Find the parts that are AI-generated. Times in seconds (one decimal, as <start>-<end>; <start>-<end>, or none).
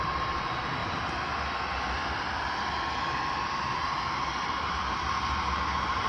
0.8-1.3; 2.0-6.1